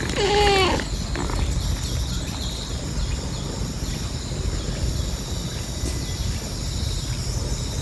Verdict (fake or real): real